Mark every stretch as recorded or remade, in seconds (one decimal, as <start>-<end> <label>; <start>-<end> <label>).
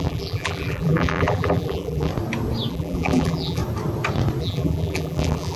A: 0.0-2.1 remade; 2.1-2.7 recorded; 2.7-3.6 remade; 3.6-4.4 recorded; 4.4-5.6 remade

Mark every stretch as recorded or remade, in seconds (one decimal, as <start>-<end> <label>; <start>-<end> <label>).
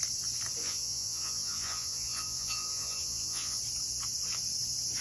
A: 0.0-0.6 recorded; 0.6-3.6 remade; 3.6-5.0 recorded